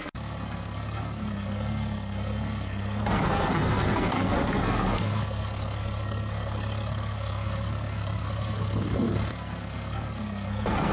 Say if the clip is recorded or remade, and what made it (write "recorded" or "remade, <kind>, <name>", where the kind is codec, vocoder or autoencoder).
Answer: remade, codec, SNAC